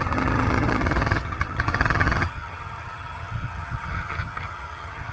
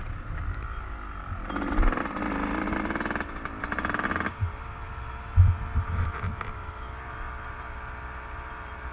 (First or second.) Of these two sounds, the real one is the second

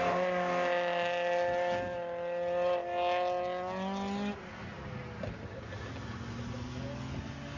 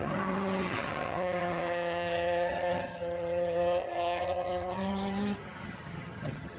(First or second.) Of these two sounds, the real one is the first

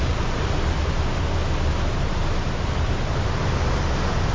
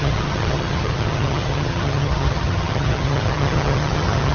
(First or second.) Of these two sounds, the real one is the first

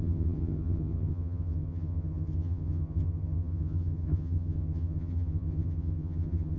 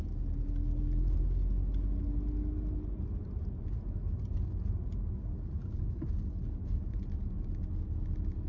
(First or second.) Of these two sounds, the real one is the second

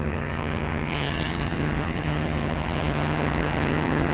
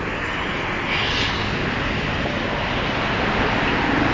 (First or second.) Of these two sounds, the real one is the second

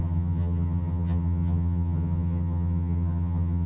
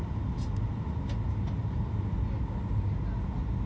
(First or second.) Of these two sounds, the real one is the second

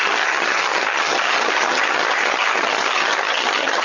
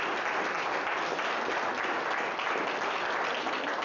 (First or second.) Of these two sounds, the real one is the second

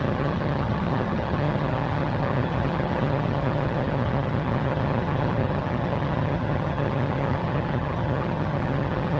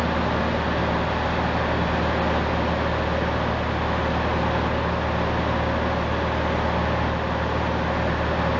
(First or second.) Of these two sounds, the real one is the second